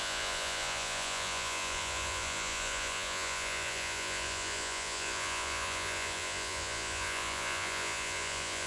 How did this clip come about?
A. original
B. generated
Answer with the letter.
B